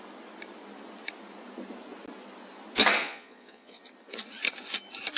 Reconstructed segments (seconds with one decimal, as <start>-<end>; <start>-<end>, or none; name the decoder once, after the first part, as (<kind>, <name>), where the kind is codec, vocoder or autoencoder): 3.0-3.8 (vocoder, Vocos)